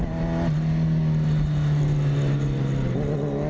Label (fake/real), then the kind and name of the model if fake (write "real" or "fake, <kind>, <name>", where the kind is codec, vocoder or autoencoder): real